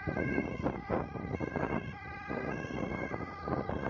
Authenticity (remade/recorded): remade